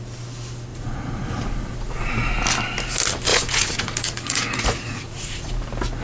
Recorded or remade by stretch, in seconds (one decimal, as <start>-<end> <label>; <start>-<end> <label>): 0.0-0.7 recorded; 0.7-1.3 remade; 1.3-3.3 recorded; 3.3-5.5 remade; 5.5-6.0 recorded